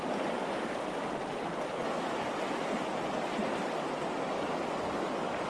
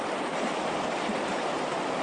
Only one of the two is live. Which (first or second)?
first